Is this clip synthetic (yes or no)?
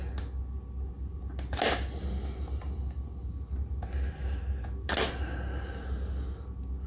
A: no